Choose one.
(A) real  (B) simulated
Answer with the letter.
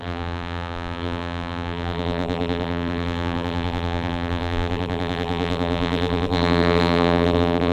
B